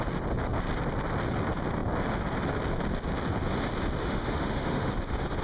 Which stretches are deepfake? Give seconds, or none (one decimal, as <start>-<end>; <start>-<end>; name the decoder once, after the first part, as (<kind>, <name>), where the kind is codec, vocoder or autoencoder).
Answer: 4.0-4.9 (autoencoder, DAC-VAE)